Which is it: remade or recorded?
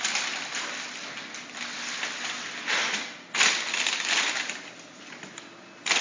recorded